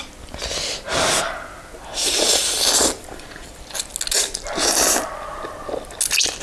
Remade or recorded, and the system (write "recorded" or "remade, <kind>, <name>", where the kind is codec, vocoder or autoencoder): recorded